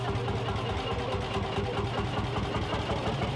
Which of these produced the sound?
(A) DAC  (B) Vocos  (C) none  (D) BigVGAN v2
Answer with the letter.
C